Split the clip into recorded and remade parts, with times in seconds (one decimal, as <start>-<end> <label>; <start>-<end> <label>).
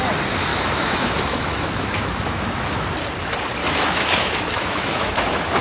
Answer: 0.0-0.5 recorded; 0.5-2.9 remade; 2.9-3.6 recorded; 3.6-5.6 remade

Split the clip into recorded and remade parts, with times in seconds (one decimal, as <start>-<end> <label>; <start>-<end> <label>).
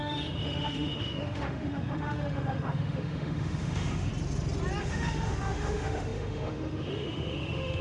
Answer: 0.0-4.1 remade; 4.1-4.8 recorded; 4.8-7.8 remade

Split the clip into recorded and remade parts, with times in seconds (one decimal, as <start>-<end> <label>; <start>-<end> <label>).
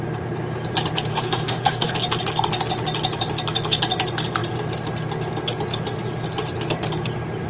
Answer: 0.0-1.1 recorded; 1.1-1.9 remade; 1.9-7.5 recorded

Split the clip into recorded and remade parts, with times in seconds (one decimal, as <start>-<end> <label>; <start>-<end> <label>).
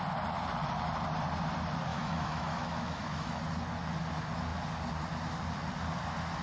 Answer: 0.0-1.9 recorded; 1.9-3.4 remade; 3.4-6.4 recorded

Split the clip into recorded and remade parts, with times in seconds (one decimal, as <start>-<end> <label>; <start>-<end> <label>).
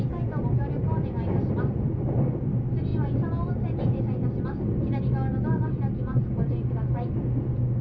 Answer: 0.0-7.8 recorded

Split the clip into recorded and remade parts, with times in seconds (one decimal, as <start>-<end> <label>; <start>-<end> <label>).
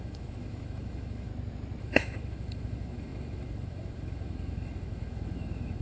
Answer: 0.0-1.3 remade; 1.3-1.8 recorded; 1.8-5.8 remade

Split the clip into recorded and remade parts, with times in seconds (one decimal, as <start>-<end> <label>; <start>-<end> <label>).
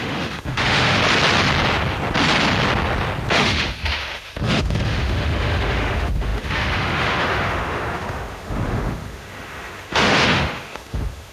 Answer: 0.0-1.0 remade; 1.0-3.3 recorded; 3.3-11.3 remade